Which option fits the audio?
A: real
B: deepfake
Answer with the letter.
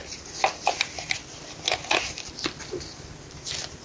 A